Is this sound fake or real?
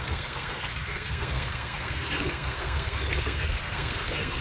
fake